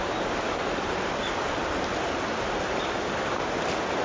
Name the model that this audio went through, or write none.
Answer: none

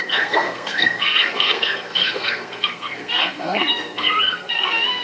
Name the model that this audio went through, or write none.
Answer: codec, SNAC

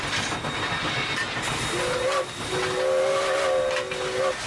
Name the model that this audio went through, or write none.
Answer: none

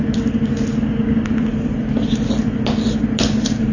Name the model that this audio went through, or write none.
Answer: none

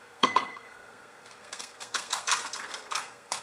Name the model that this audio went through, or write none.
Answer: codec, SNAC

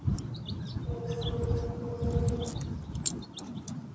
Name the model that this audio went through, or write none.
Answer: none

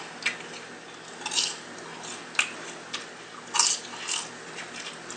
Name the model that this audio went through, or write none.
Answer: none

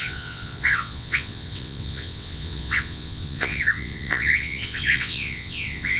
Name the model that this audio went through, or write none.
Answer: vocoder, WaveNeXt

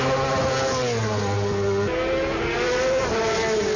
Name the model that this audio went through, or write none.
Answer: none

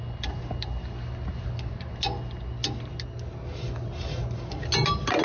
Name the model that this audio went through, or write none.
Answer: none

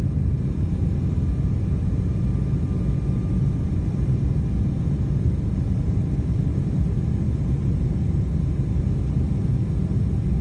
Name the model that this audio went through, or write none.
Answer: none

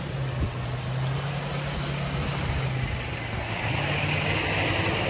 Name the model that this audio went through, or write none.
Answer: none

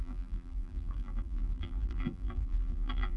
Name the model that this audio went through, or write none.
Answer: vocoder, BigVGAN v2